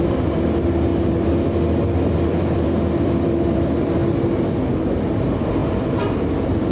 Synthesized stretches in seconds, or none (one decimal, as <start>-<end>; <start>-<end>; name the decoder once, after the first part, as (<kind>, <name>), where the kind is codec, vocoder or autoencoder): 0.0-4.0 (vocoder, BigVGAN v2); 4.8-6.7